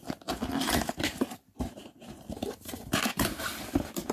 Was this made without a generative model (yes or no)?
no